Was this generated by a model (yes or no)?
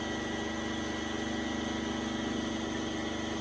no